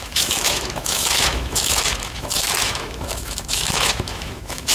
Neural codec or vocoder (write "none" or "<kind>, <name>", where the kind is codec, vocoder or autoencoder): autoencoder, DAC-VAE